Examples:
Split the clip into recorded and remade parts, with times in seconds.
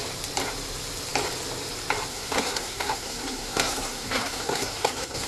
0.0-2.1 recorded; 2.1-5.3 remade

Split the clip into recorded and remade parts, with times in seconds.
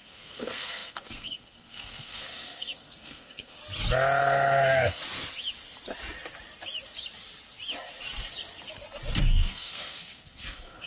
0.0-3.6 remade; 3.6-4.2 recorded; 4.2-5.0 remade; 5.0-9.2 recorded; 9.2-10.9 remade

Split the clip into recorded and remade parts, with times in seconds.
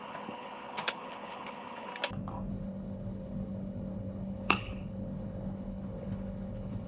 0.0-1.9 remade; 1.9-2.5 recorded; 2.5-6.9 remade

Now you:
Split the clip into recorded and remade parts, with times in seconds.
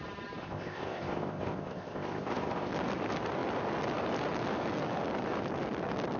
0.0-0.4 recorded; 0.4-2.7 remade; 2.7-6.2 recorded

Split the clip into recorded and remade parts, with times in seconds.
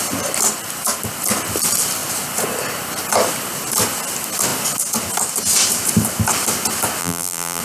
0.0-7.0 recorded; 7.0-7.6 remade